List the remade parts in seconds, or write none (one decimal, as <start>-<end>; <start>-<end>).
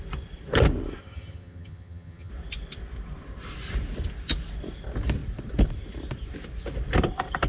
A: 1.0-2.3